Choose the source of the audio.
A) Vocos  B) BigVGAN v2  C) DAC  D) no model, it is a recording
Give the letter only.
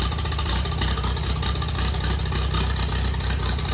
D